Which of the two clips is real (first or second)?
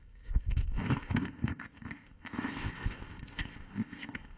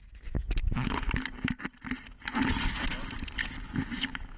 second